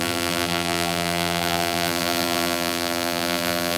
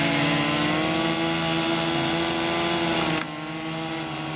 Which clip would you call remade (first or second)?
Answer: first